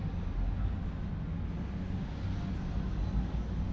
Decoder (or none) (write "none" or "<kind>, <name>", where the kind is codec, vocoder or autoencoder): none